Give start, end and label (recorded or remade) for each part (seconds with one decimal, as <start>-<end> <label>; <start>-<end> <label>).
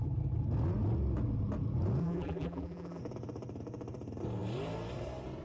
0.0-2.0 recorded; 2.0-3.0 remade; 3.0-5.4 recorded